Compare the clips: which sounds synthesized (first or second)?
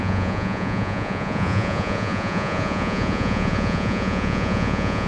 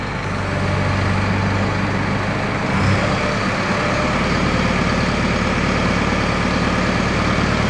first